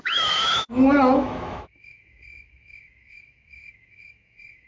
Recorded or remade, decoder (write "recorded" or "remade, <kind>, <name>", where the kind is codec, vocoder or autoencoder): remade, autoencoder, DAC-VAE